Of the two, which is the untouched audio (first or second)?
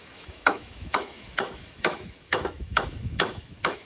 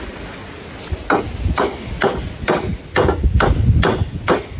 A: second